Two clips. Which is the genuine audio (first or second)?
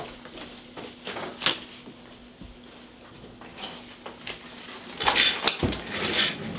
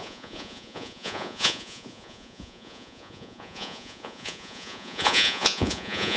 first